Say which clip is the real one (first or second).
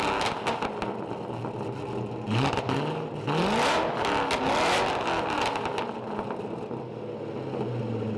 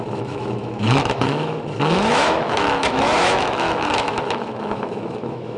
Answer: first